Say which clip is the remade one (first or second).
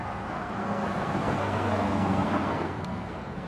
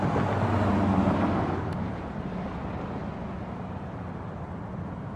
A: first